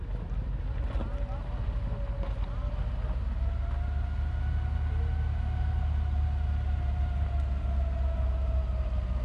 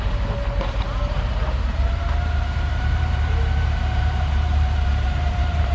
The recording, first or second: first